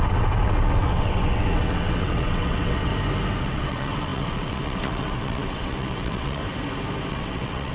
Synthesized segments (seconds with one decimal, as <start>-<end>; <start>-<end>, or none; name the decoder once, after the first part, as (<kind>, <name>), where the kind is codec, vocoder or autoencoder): 0.0-2.9 (vocoder, WaveNeXt); 3.4-6.4; 7.1-7.7